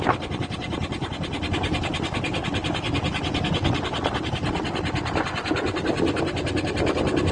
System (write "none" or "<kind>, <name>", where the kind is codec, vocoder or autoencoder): none